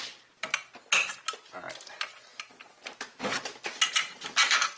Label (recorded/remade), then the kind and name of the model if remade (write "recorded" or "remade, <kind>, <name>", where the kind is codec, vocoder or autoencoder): recorded